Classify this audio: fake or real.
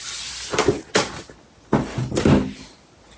real